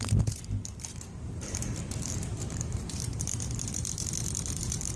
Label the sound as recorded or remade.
remade